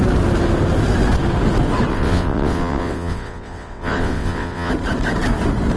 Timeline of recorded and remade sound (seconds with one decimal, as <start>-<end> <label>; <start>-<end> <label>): 0.0-1.9 recorded; 1.9-4.7 remade; 4.7-5.8 recorded